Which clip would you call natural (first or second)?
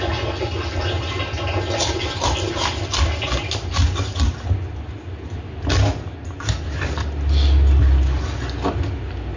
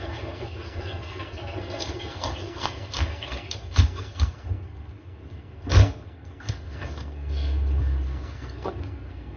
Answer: first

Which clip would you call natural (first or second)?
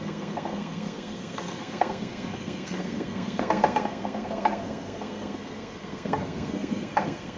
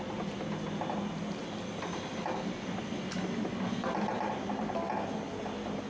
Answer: second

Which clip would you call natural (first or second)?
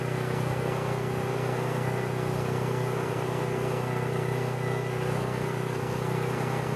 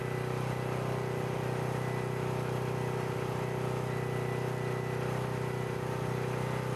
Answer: second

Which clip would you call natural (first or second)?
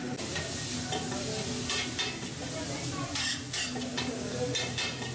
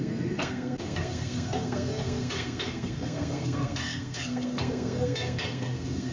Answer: first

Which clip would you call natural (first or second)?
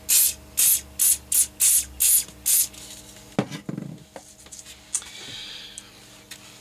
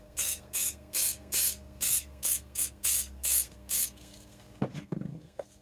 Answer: first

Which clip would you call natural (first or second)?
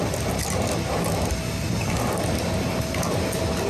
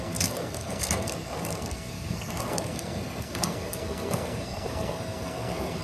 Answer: first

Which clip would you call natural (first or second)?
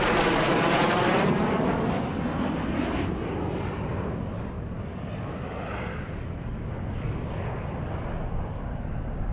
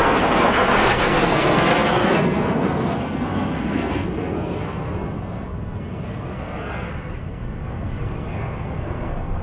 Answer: first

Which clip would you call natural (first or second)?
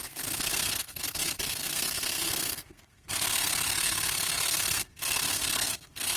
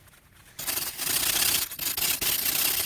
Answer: second